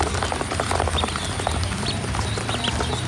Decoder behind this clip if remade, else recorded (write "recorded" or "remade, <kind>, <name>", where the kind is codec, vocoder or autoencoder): recorded